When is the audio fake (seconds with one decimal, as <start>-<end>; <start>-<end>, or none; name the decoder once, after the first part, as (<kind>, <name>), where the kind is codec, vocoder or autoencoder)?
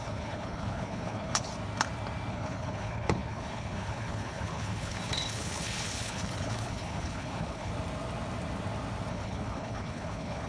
0.0-1.5 (codec, HILCodec); 2.3-7.7; 9.1-10.5